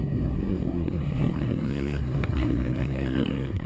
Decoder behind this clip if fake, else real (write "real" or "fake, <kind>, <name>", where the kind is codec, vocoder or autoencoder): fake, codec, SNAC